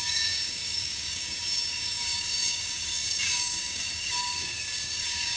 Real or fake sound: fake